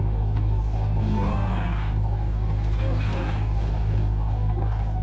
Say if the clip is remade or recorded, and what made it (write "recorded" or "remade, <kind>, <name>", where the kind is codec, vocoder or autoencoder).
remade, codec, DAC